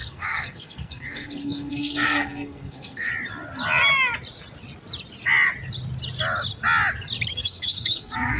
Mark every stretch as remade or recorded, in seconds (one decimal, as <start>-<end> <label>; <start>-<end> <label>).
0.0-3.1 remade; 3.1-7.3 recorded; 7.3-8.4 remade